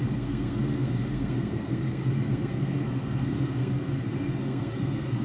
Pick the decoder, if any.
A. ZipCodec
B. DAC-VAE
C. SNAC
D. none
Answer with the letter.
C